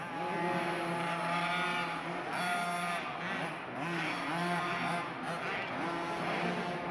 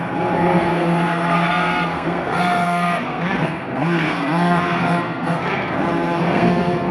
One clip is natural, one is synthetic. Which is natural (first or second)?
first